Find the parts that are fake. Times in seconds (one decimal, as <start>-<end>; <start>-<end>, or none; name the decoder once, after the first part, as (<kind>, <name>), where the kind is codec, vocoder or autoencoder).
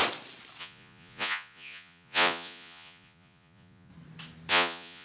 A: 0.6-3.9 (vocoder, Vocos); 4.5-5.0